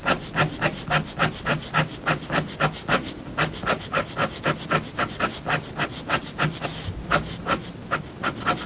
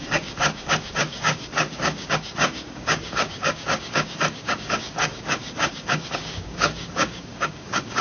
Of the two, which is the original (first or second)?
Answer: first